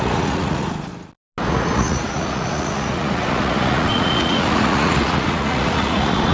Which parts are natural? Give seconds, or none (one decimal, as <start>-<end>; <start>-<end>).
0.9-1.5